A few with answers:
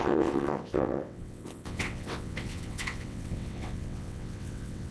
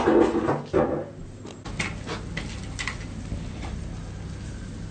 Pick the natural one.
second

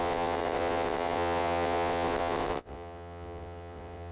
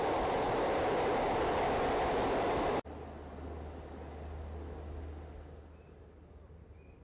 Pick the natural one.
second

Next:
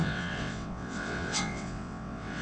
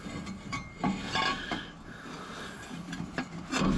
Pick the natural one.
second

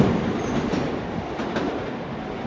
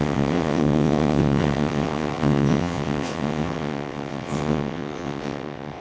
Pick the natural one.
first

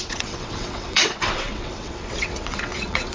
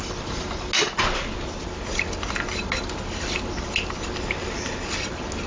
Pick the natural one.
second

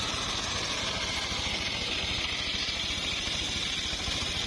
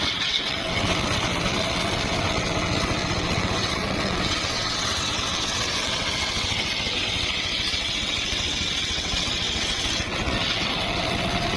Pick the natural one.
first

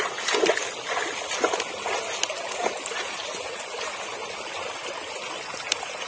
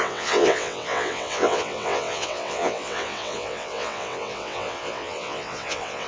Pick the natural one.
first